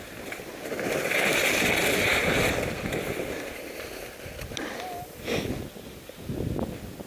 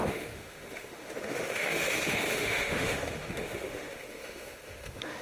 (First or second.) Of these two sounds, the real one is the first